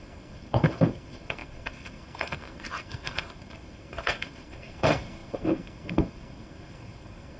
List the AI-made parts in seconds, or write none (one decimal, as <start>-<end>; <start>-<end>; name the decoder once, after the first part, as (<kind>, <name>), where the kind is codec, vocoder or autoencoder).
0.0-7.4 (codec, SNAC)